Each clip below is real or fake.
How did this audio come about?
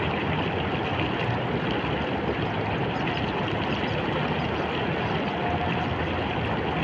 real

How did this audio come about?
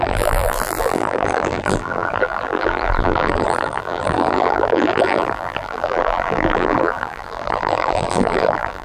fake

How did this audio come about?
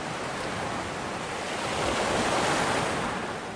fake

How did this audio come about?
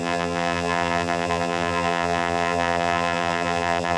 fake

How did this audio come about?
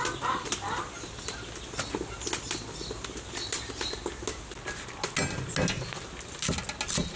real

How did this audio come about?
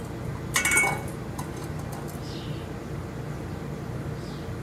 real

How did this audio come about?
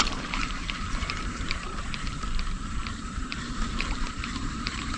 fake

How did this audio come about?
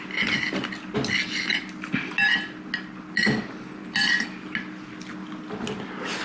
real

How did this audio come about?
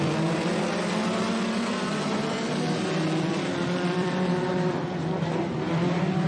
fake